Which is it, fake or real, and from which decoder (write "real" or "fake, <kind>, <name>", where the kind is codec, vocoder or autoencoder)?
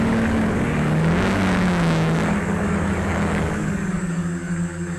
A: fake, codec, DAC